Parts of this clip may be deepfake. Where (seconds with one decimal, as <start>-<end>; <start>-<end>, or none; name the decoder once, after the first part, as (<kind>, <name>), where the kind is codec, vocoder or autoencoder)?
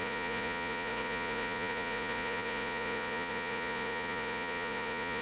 0.0-5.2 (vocoder, Vocos)